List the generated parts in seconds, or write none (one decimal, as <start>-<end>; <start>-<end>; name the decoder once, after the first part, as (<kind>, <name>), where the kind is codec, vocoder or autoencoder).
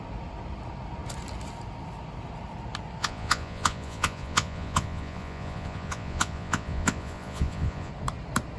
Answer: 3.0-7.9 (vocoder, Vocos)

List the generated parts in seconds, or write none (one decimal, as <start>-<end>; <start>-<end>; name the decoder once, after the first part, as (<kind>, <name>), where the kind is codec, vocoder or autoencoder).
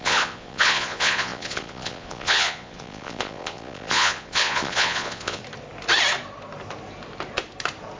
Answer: 0.0-5.4 (vocoder, Vocos)